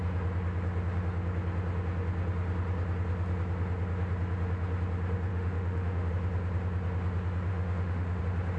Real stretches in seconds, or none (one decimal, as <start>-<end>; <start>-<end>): 0.0-5.3; 6.1-7.5; 8.2-8.6